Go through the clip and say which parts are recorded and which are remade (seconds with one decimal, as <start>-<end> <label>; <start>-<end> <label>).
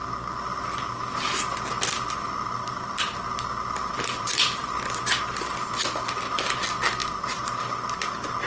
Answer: 0.0-0.5 remade; 0.5-2.1 recorded; 2.1-4.6 remade; 4.6-5.2 recorded; 5.2-8.5 remade